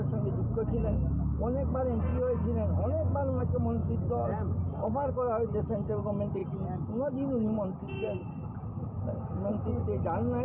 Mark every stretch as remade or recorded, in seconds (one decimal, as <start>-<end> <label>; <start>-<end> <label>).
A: 0.0-10.4 recorded